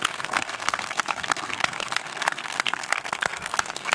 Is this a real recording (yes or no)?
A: no